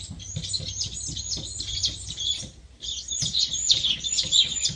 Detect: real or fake real